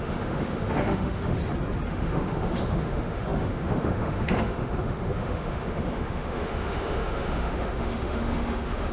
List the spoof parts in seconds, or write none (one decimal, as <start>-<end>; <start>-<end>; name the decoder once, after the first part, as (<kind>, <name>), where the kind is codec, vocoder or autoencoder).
0.0-1.4 (autoencoder, DAC-VAE); 1.9-8.9